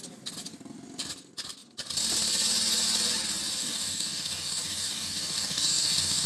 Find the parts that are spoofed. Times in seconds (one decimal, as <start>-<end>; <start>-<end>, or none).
3.6-6.3